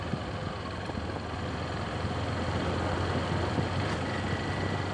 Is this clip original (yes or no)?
yes